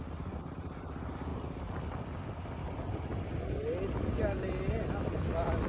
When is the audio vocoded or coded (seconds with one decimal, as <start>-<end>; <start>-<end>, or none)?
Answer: none